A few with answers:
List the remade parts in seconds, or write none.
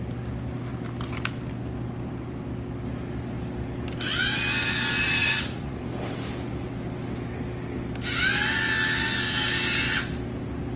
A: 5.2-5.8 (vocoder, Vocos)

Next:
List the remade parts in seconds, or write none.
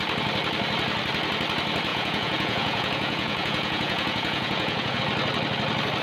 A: 1.9-5.0 (vocoder, Vocos)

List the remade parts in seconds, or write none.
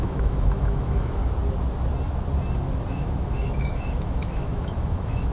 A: 0.0-1.2 (autoencoder, DAC-VAE); 2.9-5.3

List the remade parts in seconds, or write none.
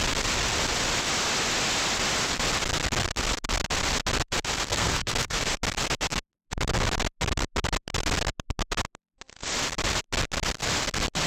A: 4.7-5.4 (codec, SNAC)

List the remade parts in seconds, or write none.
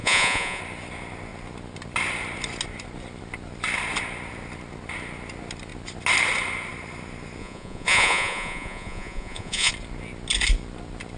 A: 0.0-0.6 (vocoder, Vocos); 7.4-9.7